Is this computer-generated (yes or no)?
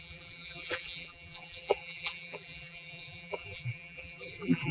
yes